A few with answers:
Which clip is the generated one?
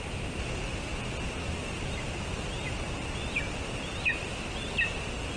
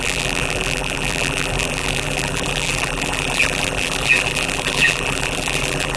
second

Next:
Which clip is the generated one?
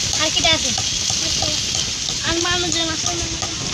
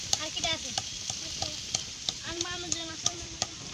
second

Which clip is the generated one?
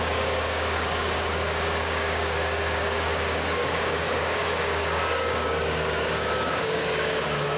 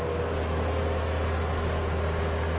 first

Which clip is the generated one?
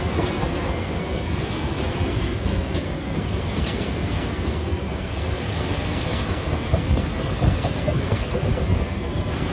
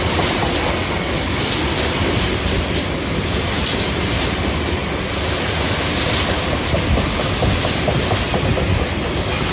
first